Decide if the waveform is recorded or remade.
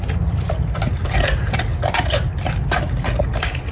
recorded